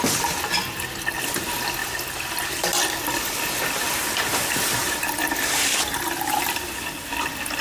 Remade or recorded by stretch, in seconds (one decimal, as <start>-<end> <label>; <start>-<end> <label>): 0.0-7.6 recorded